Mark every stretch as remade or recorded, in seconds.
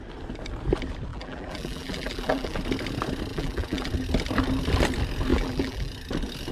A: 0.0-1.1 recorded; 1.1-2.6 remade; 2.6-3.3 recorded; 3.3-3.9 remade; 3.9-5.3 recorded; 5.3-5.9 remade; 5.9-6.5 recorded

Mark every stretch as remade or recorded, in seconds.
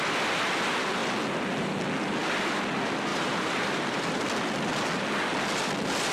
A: 0.0-3.1 recorded; 3.1-4.2 remade; 4.2-6.1 recorded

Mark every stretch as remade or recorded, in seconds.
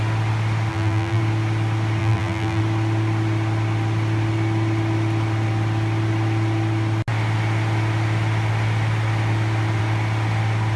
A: 0.0-0.7 recorded; 0.7-1.2 remade; 1.2-2.0 recorded; 2.0-2.6 remade; 2.6-10.8 recorded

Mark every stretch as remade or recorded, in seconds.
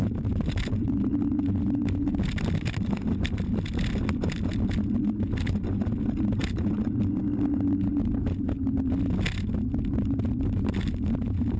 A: 0.0-1.3 remade; 1.3-6.4 recorded; 6.4-7.2 remade; 7.2-11.6 recorded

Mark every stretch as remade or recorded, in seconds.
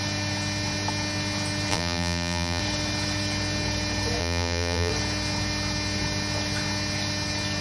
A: 0.0-1.7 recorded; 1.7-2.6 remade; 2.6-4.2 recorded; 4.2-4.9 remade; 4.9-7.6 recorded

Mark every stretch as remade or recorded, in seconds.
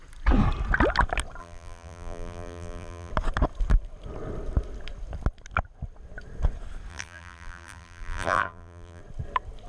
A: 0.0-1.4 recorded; 1.4-3.1 remade; 3.1-6.9 recorded; 6.9-9.0 remade; 9.0-9.7 recorded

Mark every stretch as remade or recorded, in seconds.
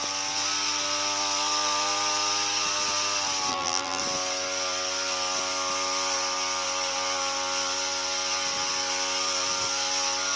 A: 0.0-3.5 recorded; 3.5-4.0 remade; 4.0-10.4 recorded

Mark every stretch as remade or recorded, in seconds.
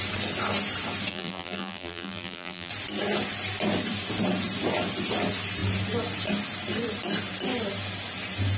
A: 0.0-1.1 recorded; 1.1-2.7 remade; 2.7-8.6 recorded